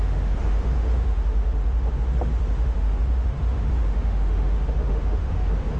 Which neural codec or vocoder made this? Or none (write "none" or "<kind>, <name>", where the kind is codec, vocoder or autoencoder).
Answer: autoencoder, DAC-VAE